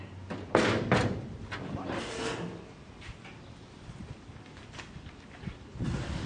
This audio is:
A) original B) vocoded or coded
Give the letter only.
A